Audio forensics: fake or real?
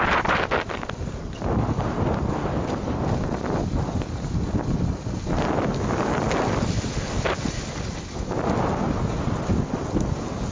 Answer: real